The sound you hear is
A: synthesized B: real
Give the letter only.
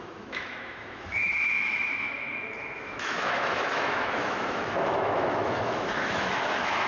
A